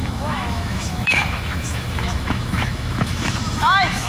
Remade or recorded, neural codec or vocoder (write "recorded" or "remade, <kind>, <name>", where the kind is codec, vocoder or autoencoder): remade, autoencoder, DAC-VAE